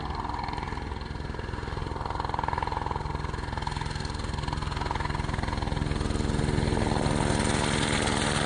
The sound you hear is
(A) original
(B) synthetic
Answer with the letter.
A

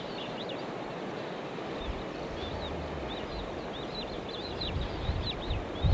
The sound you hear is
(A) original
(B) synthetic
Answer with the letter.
A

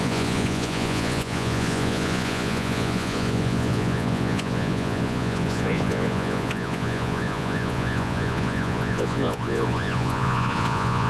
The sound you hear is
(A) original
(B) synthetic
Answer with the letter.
B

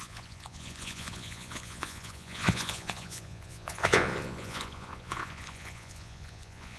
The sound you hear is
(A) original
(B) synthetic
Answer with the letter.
B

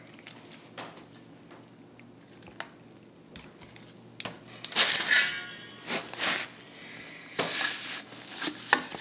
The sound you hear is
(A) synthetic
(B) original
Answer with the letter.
B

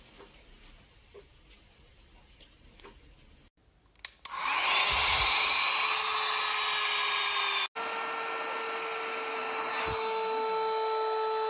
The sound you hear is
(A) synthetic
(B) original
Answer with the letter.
B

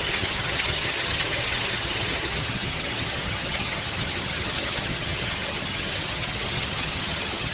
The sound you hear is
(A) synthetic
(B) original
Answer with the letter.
A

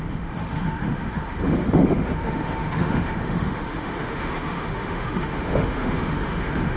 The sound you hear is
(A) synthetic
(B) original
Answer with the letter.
A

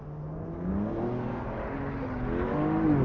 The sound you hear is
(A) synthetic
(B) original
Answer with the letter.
B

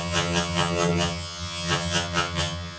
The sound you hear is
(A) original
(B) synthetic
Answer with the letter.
B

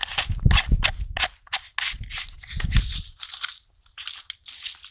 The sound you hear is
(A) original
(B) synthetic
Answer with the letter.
A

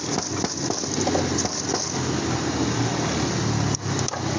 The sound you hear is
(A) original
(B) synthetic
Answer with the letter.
A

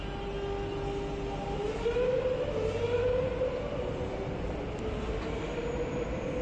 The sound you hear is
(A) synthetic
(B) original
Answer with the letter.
B